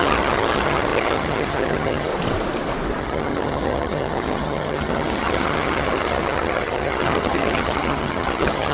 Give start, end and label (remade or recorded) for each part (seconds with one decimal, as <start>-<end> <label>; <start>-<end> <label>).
0.0-2.1 remade; 2.1-3.0 recorded; 3.0-8.7 remade